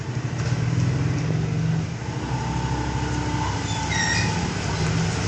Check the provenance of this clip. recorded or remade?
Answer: recorded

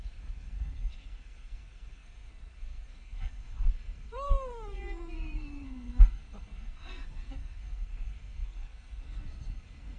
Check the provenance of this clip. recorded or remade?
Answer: remade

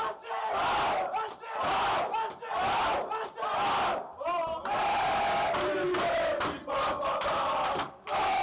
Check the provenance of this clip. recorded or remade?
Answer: recorded